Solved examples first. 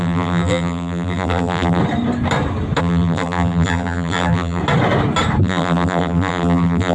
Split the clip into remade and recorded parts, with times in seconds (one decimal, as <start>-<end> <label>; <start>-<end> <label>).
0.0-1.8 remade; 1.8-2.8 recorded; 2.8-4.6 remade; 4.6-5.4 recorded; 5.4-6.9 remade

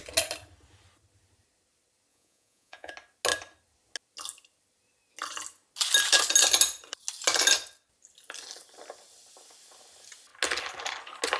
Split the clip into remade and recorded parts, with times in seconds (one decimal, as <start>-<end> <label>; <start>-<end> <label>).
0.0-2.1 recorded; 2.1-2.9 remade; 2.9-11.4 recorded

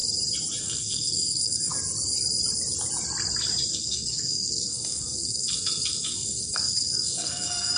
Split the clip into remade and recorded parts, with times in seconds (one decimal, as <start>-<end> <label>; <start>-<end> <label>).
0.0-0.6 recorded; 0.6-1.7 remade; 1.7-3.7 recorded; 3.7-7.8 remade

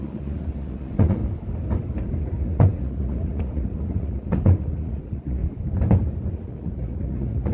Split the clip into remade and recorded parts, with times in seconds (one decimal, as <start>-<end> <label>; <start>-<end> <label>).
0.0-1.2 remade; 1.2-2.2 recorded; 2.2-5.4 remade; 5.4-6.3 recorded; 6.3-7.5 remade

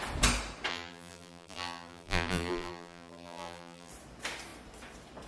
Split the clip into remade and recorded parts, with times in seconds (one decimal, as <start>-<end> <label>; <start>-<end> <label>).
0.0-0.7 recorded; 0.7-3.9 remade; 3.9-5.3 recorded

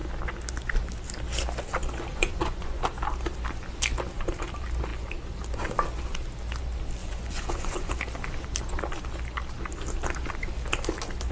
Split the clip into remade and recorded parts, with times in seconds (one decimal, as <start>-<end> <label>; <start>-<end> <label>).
0.0-2.1 recorded; 2.1-2.8 remade; 2.8-7.0 recorded; 7.0-7.9 remade; 7.9-11.3 recorded

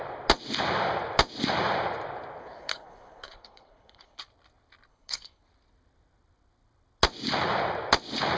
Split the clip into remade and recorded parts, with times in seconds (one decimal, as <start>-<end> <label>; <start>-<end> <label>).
0.0-2.4 recorded; 2.4-4.2 remade; 4.2-4.9 recorded; 4.9-5.4 remade; 5.4-8.4 recorded

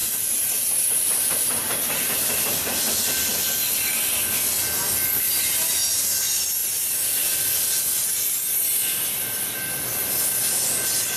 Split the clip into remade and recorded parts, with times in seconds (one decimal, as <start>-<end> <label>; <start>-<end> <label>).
0.0-2.4 remade; 2.4-11.2 recorded